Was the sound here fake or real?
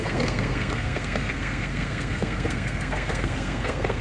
fake